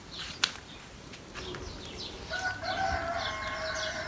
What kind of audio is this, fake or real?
real